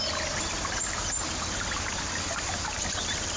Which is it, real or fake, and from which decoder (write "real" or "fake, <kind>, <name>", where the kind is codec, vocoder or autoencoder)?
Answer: real